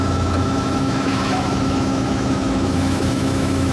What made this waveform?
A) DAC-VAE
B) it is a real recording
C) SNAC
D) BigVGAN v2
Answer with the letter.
A